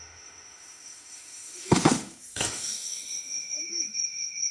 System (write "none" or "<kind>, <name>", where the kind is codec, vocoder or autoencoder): autoencoder, DAC-VAE